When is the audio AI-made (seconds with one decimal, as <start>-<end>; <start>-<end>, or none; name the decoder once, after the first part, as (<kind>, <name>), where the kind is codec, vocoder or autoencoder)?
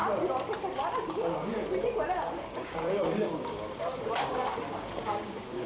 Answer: 1.1-1.6 (codec, DAC); 2.1-5.7